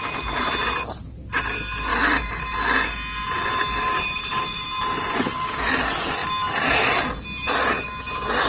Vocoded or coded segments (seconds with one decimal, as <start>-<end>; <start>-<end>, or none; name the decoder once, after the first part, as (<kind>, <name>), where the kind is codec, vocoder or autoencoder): none